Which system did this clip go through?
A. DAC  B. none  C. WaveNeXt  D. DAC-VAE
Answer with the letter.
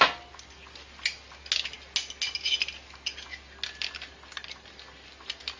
B